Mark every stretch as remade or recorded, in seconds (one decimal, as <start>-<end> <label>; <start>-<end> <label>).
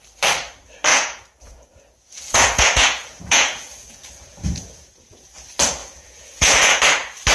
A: 0.0-0.9 recorded; 0.9-5.3 remade; 5.3-5.8 recorded; 5.8-6.8 remade; 6.8-7.3 recorded